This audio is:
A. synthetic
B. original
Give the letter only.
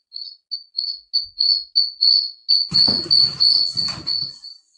B